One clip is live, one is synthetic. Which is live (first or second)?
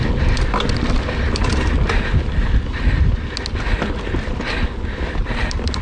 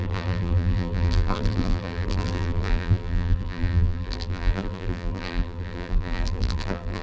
first